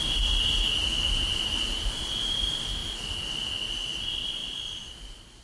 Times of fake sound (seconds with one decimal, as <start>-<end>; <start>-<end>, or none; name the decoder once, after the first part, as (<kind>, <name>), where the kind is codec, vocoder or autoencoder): none